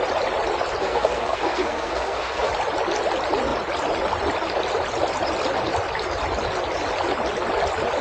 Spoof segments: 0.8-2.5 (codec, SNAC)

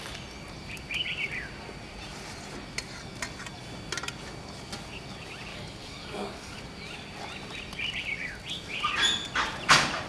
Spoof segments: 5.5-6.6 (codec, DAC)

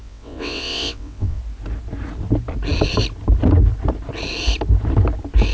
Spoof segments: 0.0-1.4 (vocoder, WaveNeXt)

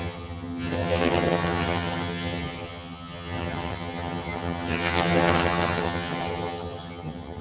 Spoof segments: 0.0-7.4 (vocoder, HiFi-GAN)

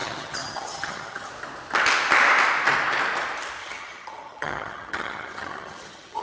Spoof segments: 0.0-1.3 (vocoder, HiFi-GAN); 3.6-6.2

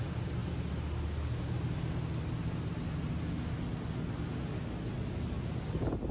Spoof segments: none

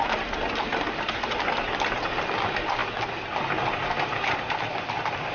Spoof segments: none

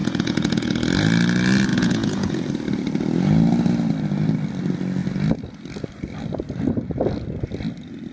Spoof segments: 0.0-0.7 (vocoder, Vocos); 1.7-2.5